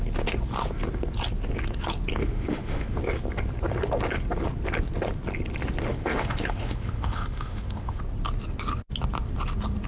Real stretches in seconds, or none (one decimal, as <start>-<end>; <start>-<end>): 0.0-2.2; 3.0-5.9; 8.0-9.9